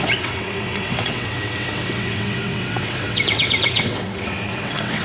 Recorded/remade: remade